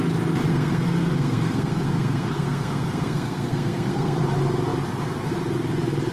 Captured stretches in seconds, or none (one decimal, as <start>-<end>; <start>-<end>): 0.0-0.5; 4.2-6.1